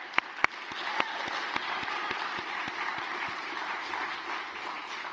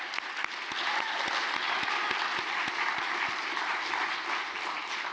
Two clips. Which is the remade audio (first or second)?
first